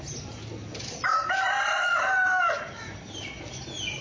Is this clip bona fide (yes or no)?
yes